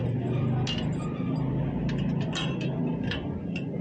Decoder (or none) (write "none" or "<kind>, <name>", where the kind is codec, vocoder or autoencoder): none